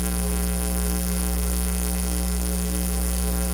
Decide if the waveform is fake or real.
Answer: fake